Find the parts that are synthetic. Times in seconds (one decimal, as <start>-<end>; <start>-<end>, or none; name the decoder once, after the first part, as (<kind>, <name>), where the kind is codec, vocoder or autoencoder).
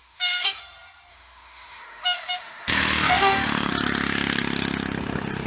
0.0-0.6 (autoencoder, DAC-VAE); 1.1-3.7